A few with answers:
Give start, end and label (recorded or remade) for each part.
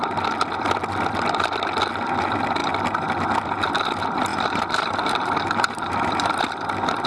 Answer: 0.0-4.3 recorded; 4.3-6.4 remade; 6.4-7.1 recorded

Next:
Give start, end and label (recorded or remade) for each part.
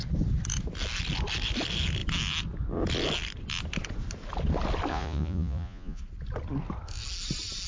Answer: 0.0-4.9 recorded; 4.9-6.0 remade; 6.0-7.7 recorded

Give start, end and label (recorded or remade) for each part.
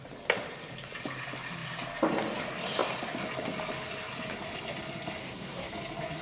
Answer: 0.0-5.2 recorded; 5.2-5.7 remade; 5.7-6.2 recorded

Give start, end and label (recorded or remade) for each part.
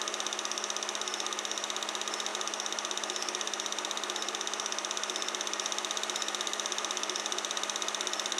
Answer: 0.0-8.4 recorded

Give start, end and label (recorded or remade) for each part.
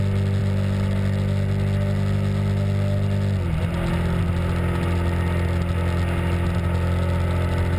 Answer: 0.0-7.8 recorded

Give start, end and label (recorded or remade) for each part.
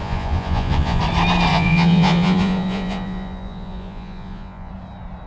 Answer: 0.0-1.0 remade; 1.0-1.5 recorded; 1.5-4.7 remade; 4.7-5.3 recorded